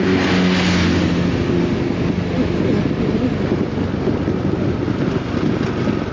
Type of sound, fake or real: real